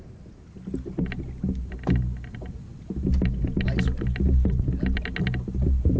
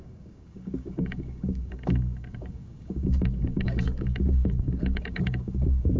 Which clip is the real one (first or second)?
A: first